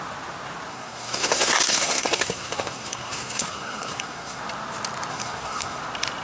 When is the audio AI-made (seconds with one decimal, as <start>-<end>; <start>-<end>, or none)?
0.7-4.4; 5.1-5.8